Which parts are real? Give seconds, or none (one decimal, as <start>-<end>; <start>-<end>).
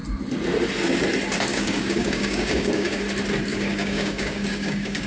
0.0-1.5; 3.0-3.5